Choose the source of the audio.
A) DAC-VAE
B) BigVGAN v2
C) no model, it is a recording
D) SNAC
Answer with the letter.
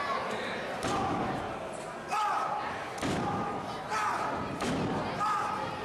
C